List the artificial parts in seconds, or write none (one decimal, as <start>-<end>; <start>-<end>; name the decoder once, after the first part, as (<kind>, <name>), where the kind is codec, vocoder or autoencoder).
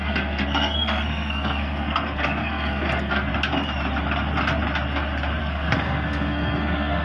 0.0-3.3 (codec, SNAC); 5.4-7.0